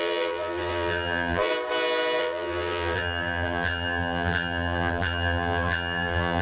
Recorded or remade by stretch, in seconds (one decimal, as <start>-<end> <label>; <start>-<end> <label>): 0.0-1.5 remade; 1.5-2.2 recorded; 2.2-6.4 remade